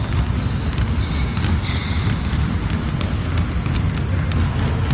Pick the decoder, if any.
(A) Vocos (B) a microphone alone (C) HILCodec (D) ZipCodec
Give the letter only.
B